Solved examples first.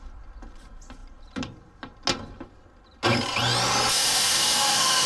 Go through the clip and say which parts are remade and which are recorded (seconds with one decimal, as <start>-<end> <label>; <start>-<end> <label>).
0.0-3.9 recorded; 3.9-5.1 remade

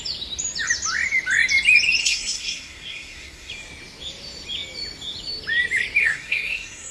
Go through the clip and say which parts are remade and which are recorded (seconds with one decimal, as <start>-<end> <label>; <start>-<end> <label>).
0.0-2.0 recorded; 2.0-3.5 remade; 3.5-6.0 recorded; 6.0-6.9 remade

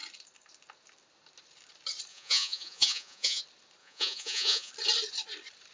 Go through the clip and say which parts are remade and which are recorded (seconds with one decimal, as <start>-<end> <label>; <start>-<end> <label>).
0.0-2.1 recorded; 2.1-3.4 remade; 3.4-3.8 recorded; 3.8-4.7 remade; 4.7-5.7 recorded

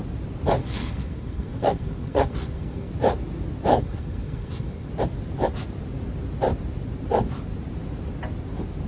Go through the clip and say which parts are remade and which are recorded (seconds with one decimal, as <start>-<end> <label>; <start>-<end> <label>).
0.0-0.6 recorded; 0.6-2.9 remade; 2.9-3.7 recorded; 3.7-4.9 remade; 4.9-8.9 recorded

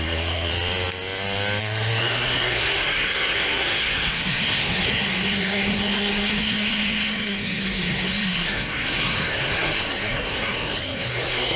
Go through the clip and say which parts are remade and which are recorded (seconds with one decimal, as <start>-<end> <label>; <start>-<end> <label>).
0.0-0.5 remade; 0.5-1.6 recorded; 1.6-11.6 remade